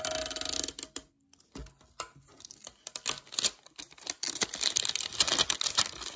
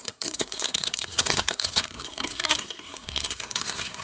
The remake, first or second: second